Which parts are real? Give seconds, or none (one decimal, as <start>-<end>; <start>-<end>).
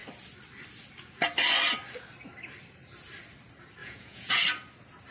0.0-3.8; 4.4-5.1